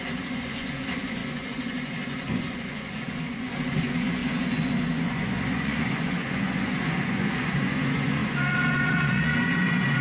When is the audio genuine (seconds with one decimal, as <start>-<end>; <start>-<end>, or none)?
none